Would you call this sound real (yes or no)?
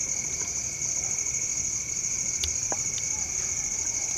yes